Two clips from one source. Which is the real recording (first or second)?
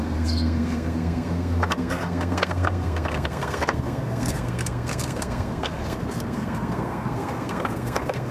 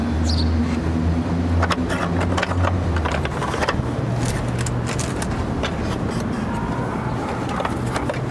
second